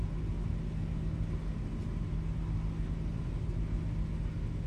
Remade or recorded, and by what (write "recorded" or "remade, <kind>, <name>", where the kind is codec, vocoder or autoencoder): recorded